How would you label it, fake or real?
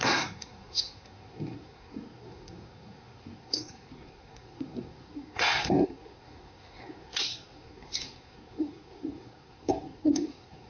fake